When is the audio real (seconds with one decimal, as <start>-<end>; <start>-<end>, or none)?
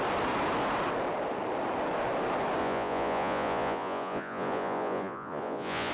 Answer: 0.0-2.6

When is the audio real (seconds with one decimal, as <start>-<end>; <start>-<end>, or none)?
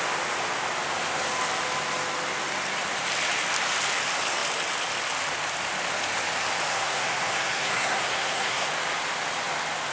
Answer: 0.0-6.7; 8.7-9.9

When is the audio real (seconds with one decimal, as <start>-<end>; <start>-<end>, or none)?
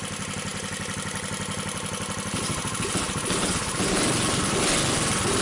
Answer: 0.0-5.4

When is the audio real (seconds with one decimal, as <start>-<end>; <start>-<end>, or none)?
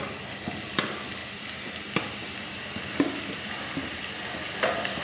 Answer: 0.0-5.0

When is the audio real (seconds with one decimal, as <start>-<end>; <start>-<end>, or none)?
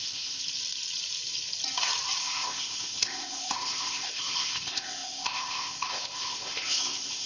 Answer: 0.4-2.2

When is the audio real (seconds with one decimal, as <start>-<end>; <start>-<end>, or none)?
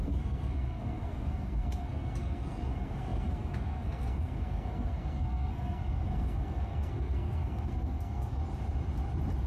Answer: 8.4-9.5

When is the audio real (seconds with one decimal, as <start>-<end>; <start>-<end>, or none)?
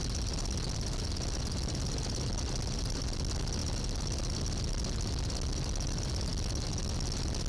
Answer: 0.0-7.5